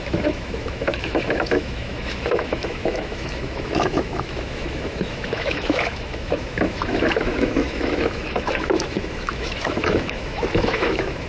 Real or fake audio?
fake